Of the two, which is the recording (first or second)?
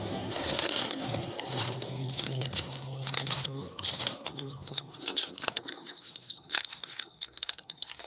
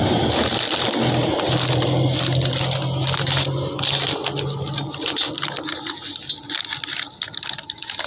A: second